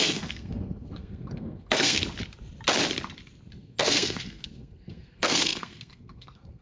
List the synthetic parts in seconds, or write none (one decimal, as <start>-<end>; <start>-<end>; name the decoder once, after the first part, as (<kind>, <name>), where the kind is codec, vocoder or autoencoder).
0.0-2.0 (codec, SNAC); 3.5-6.6